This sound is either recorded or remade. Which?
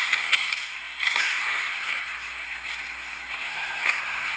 remade